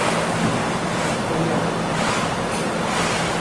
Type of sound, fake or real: real